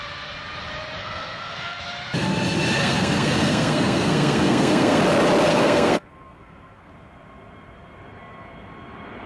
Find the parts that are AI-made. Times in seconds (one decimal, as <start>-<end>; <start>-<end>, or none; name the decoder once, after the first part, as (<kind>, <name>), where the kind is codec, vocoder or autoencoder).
1.0-1.8 (codec, SNAC); 2.8-5.0; 5.5-6.9